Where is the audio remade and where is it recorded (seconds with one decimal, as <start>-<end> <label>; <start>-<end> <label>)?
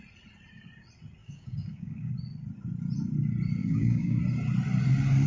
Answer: 0.0-1.2 recorded; 1.2-2.1 remade; 2.1-3.6 recorded; 3.6-4.2 remade; 4.2-5.3 recorded